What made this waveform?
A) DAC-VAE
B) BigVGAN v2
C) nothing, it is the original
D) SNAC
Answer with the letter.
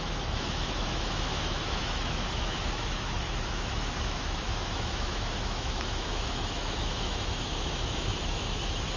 A